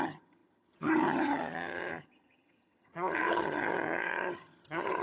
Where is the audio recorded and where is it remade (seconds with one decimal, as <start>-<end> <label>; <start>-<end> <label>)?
0.0-5.0 remade